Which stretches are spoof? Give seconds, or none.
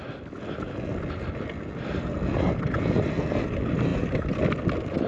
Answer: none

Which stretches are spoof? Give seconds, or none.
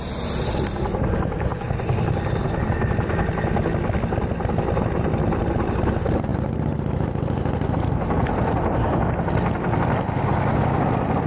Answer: 0.0-0.5 (vocoder, BigVGAN v2)